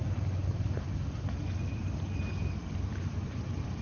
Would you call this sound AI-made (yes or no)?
no